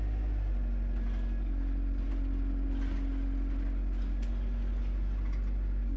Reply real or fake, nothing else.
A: real